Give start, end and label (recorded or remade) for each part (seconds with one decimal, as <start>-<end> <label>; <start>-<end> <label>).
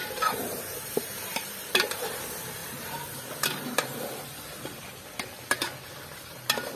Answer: 0.0-2.2 remade; 2.2-6.8 recorded